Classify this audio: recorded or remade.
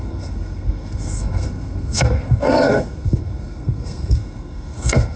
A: remade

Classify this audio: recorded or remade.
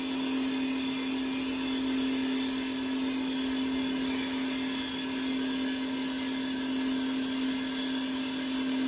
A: recorded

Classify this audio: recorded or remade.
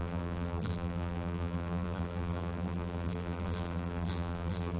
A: remade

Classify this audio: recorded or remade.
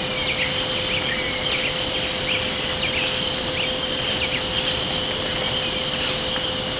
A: recorded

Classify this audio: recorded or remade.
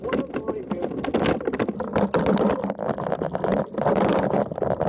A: recorded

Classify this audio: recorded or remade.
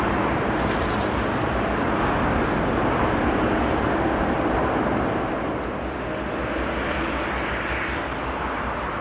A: recorded